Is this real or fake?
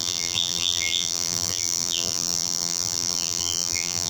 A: fake